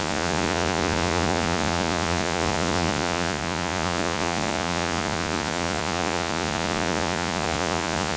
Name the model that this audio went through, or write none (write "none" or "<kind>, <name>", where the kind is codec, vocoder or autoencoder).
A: vocoder, Vocos